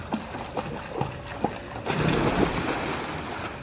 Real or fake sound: real